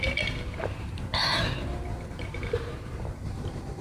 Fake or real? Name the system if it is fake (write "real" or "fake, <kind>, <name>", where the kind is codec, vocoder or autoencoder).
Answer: fake, vocoder, BigVGAN v2